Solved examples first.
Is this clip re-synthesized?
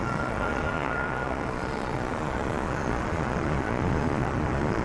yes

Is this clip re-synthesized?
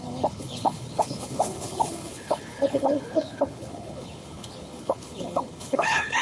yes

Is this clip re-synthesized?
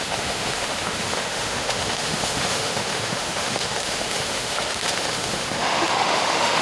yes